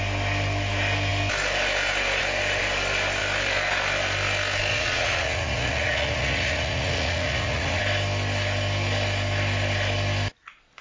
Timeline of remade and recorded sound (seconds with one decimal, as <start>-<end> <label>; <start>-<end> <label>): 0.0-4.7 recorded; 4.7-7.8 remade; 7.8-10.8 recorded